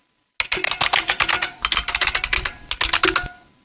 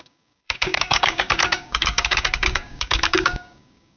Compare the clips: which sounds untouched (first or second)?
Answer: first